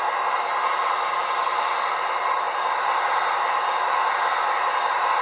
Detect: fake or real real